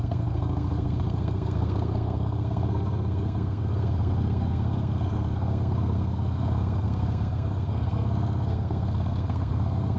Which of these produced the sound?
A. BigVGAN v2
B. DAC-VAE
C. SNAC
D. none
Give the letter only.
C